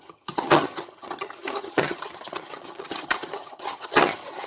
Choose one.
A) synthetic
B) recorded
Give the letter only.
A